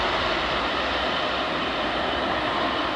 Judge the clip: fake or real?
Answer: real